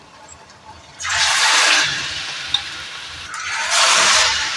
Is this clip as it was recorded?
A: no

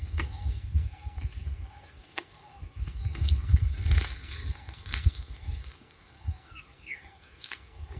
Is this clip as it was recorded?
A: no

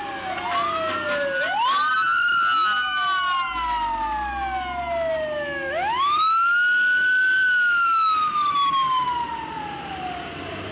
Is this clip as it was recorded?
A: yes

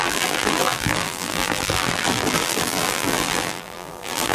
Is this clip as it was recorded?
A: no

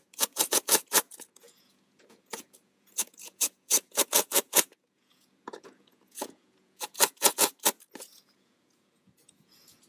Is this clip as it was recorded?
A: no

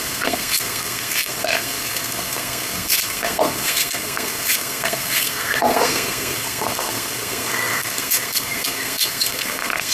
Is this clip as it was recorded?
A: no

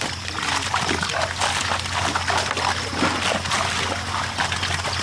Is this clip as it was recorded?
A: yes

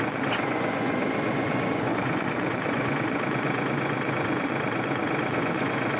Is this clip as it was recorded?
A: no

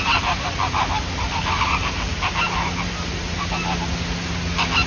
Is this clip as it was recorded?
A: yes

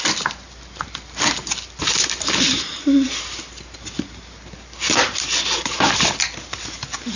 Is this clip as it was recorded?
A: yes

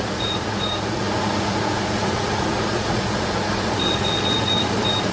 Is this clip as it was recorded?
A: no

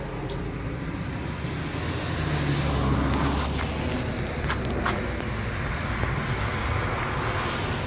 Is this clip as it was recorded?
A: yes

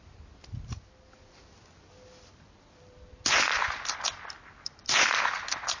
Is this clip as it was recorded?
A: yes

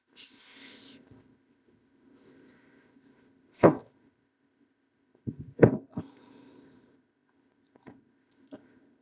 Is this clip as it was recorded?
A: no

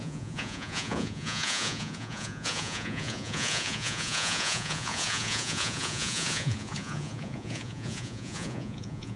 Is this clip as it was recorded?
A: no